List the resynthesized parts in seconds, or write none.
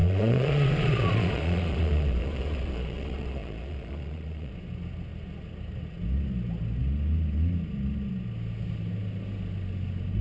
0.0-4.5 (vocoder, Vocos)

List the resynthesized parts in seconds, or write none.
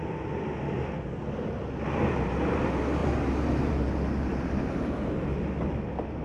none